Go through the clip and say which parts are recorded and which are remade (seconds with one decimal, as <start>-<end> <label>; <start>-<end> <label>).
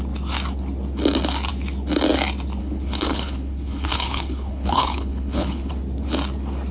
0.0-2.6 recorded; 2.6-5.7 remade; 5.7-6.7 recorded